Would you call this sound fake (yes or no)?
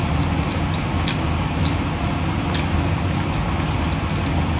no